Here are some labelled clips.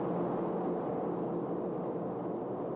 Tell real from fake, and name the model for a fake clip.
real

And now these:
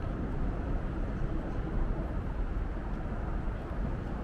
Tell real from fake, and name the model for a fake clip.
fake, vocoder, BigVGAN v2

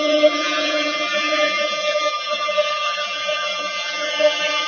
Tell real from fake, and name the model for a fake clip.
fake, vocoder, BigVGAN v2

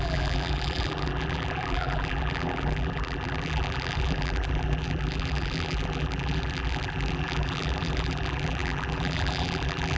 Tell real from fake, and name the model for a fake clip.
fake, vocoder, BigVGAN v2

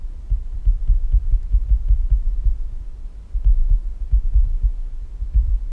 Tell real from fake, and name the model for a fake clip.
fake, vocoder, BigVGAN v2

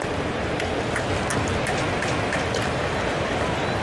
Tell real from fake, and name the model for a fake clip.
real